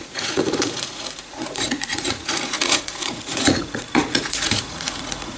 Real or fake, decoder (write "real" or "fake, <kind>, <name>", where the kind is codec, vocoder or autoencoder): fake, vocoder, Vocos